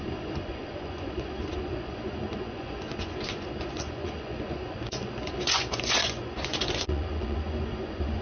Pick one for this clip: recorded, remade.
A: remade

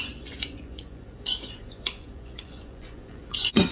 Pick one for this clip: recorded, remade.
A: remade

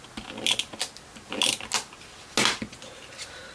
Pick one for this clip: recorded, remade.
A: recorded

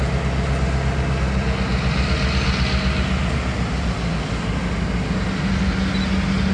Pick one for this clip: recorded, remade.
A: recorded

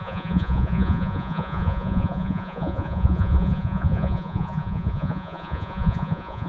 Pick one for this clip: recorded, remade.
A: remade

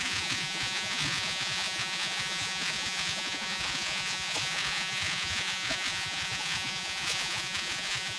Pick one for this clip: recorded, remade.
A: remade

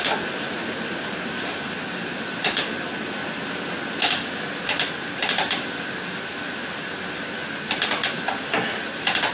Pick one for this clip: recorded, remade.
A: recorded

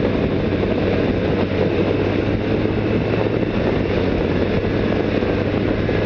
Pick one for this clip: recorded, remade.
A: recorded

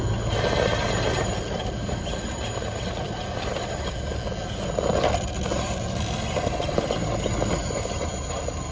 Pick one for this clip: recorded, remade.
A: recorded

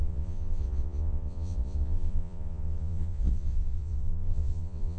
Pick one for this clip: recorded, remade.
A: remade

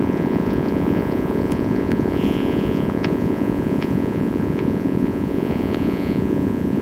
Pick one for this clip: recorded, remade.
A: remade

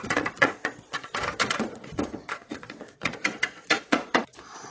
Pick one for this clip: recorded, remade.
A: remade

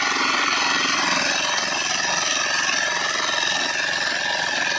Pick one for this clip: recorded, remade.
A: recorded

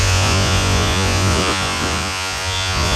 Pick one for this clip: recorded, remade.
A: remade